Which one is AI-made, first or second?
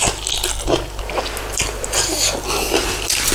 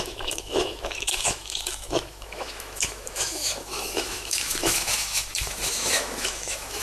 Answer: second